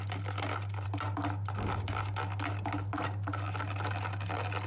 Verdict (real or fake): real